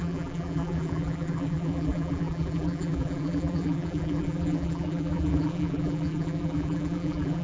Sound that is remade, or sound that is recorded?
remade